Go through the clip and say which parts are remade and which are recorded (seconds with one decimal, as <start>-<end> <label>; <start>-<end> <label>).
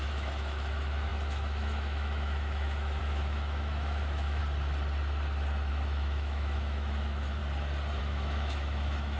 0.0-4.4 remade; 4.4-5.7 recorded; 5.7-7.4 remade; 7.4-8.0 recorded; 8.0-9.2 remade